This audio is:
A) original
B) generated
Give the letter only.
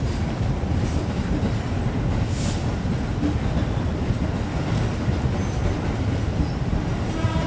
A